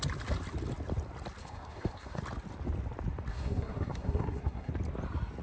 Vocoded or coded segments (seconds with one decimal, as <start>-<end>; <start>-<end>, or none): 1.4-2.2; 3.3-4.7